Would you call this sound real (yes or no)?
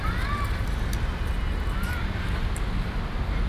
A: yes